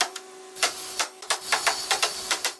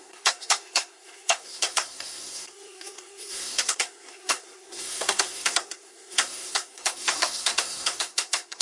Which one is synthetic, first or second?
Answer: second